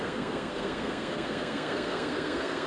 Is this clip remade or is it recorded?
remade